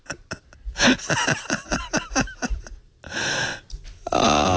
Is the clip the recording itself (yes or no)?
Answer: yes